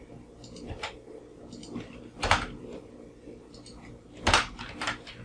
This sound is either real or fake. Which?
real